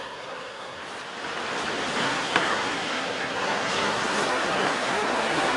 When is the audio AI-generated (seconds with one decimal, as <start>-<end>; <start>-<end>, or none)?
0.0-0.8; 2.0-5.6